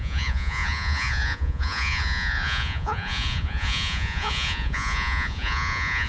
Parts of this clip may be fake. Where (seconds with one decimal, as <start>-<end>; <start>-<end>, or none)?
0.0-6.1